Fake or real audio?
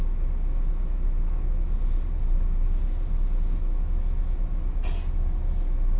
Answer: real